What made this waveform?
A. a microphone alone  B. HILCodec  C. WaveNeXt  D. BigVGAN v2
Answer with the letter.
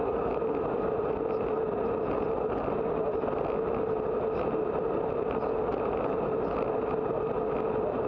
A